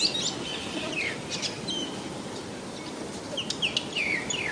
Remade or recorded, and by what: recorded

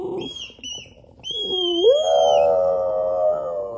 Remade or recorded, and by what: recorded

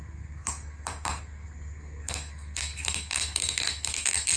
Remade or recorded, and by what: remade, codec, SNAC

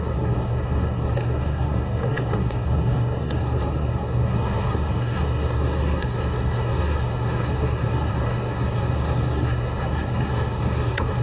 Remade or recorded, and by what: remade, codec, SNAC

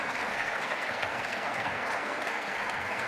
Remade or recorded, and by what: remade, codec, SNAC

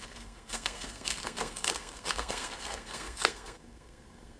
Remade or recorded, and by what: remade, codec, SNAC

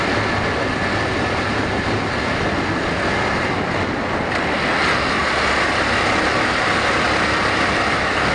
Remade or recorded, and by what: recorded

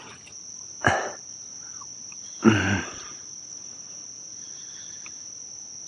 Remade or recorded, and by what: recorded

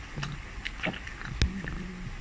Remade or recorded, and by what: recorded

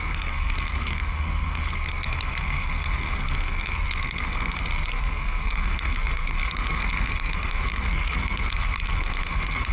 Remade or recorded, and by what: remade, codec, SNAC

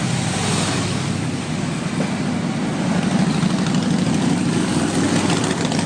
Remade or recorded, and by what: recorded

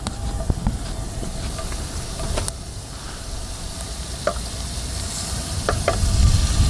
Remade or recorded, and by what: recorded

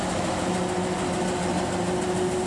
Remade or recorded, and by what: recorded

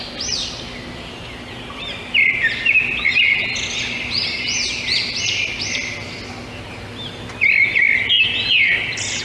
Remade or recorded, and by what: recorded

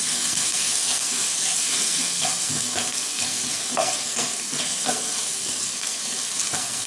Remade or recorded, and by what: remade, codec, SNAC